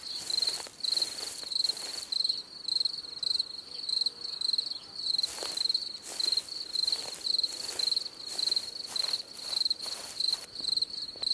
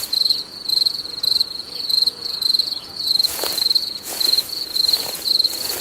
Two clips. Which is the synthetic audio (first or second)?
second